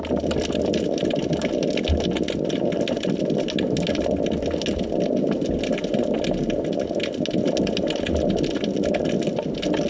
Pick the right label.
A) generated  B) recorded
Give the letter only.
B